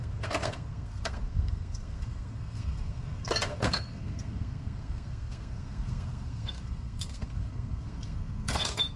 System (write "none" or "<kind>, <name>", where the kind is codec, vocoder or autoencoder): codec, SNAC